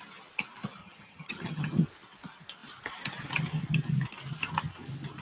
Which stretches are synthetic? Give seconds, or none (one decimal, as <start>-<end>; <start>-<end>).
0.8-1.7